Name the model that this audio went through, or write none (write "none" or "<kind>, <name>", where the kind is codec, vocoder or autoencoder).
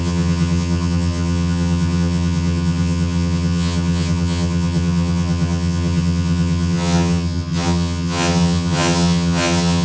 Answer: vocoder, HiFi-GAN